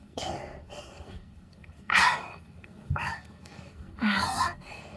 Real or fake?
fake